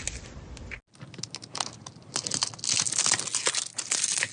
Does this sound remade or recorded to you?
recorded